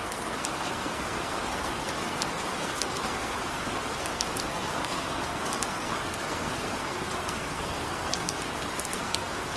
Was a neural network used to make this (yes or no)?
yes